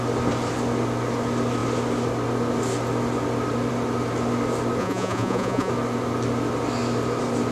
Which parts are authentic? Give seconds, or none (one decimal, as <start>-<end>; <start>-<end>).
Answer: 0.0-4.8; 5.7-7.5